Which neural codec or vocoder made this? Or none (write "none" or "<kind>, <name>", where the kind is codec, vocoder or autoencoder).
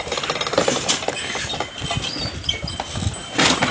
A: none